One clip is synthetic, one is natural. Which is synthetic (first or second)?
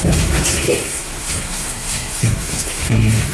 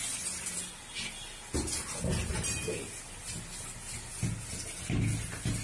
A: first